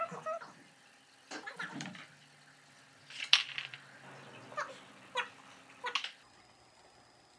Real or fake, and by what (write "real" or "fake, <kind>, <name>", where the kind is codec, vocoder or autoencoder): real